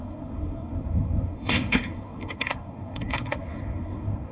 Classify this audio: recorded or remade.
remade